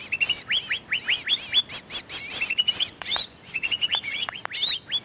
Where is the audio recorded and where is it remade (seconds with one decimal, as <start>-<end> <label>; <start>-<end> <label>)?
0.0-2.8 recorded; 2.8-4.4 remade; 4.4-5.0 recorded

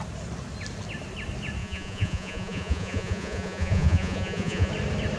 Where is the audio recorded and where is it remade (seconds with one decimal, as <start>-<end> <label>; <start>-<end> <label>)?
0.0-1.6 recorded; 1.6-4.7 remade; 4.7-5.2 recorded

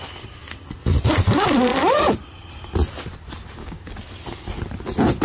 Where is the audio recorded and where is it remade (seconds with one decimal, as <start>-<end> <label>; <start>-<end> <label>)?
0.0-3.6 recorded; 3.6-4.1 remade; 4.1-5.2 recorded

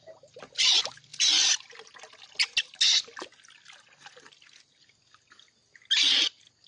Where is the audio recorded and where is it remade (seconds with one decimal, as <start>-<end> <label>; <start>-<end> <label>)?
0.0-6.7 recorded